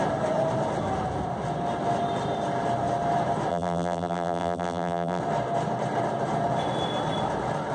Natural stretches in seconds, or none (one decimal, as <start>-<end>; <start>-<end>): 0.0-3.5; 5.2-7.7